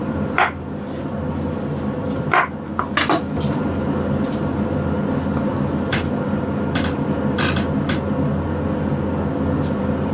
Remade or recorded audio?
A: recorded